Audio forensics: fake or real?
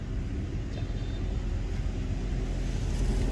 real